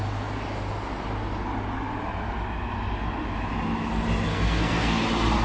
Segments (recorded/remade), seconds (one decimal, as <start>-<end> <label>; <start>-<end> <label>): 0.0-4.3 recorded; 4.3-5.0 remade; 5.0-5.4 recorded